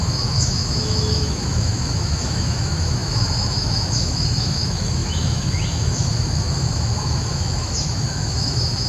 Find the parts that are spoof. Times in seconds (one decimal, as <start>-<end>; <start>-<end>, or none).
0.0-8.9